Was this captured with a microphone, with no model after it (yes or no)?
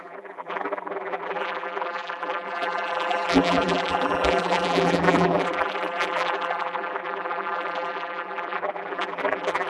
no